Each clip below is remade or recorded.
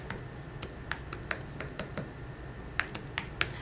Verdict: recorded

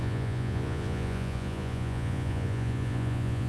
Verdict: remade